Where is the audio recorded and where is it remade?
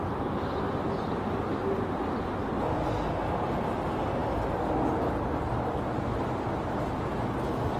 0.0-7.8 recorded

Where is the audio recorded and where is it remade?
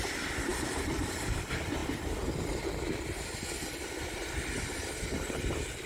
0.0-0.5 remade; 0.5-1.0 recorded; 1.0-1.8 remade; 1.8-5.3 recorded; 5.3-5.9 remade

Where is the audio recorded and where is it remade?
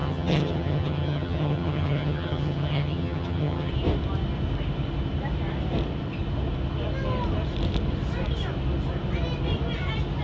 0.0-3.7 remade; 3.7-10.2 recorded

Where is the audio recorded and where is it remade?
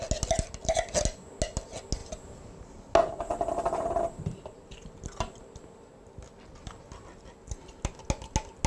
0.0-8.7 recorded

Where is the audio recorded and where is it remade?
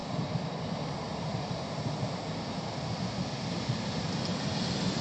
0.0-5.0 remade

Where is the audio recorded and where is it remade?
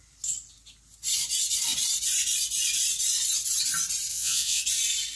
0.0-4.1 recorded; 4.1-4.6 remade; 4.6-5.2 recorded